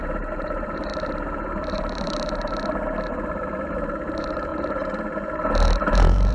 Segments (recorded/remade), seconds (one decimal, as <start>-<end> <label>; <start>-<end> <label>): 0.0-6.3 remade